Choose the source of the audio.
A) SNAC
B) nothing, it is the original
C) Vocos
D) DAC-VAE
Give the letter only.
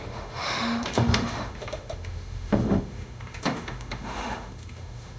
D